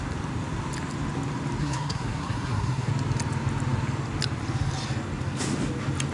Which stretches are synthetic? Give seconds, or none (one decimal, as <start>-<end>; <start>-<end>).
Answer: 1.6-2.9